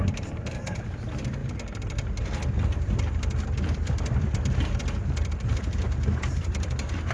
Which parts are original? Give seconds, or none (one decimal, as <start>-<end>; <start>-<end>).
1.4-3.7; 4.8-5.4